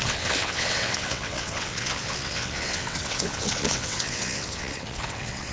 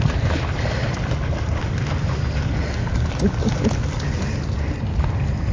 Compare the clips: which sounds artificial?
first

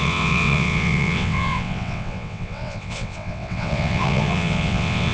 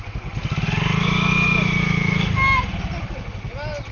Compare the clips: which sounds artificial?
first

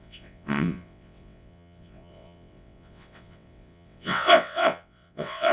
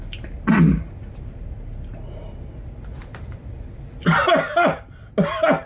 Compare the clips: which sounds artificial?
first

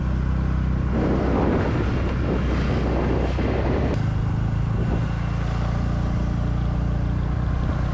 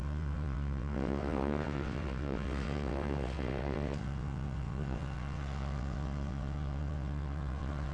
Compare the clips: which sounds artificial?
second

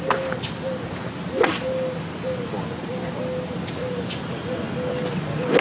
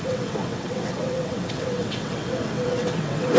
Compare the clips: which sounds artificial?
second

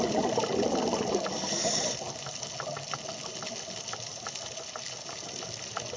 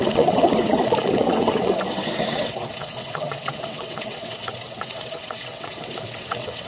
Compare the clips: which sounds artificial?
second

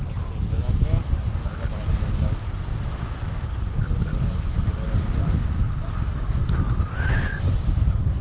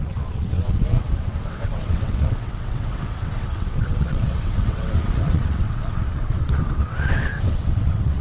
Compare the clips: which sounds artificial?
second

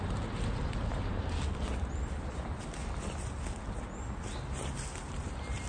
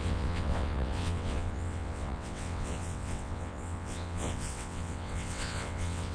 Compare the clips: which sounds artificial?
second